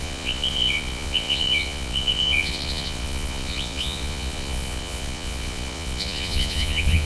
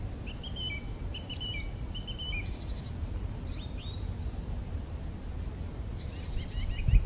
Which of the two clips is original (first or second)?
second